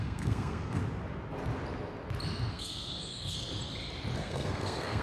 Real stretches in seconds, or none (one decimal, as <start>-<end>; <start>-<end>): 0.8-2.5; 3.5-4.2